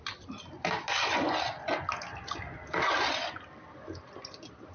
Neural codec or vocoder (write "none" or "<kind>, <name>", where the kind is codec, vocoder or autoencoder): none